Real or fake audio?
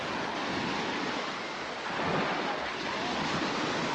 real